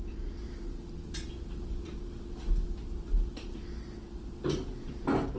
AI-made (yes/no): no